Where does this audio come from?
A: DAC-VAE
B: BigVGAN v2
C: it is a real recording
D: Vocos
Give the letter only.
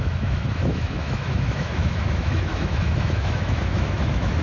A